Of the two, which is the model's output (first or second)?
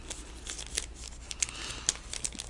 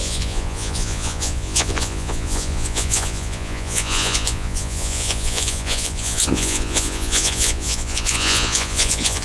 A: second